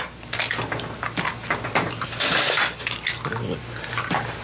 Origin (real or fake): real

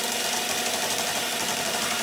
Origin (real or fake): real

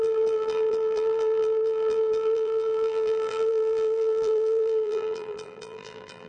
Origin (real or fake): fake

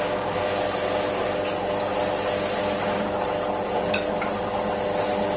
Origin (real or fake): real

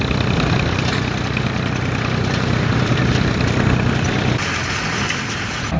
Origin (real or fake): fake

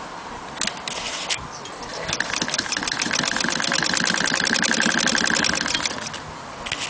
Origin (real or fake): real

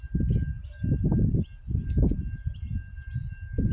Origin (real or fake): real